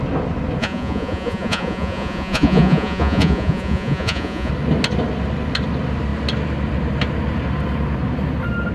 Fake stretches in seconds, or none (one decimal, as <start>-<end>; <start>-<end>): 0.6-4.5